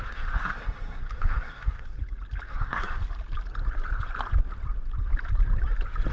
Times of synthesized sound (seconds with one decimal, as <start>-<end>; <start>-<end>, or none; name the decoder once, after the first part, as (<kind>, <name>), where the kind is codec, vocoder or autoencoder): 0.0-2.0 (codec, SNAC); 2.5-3.0